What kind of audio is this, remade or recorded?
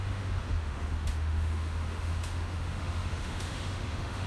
remade